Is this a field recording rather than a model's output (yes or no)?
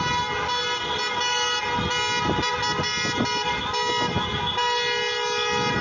yes